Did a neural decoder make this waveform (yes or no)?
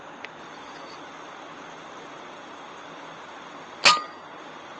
no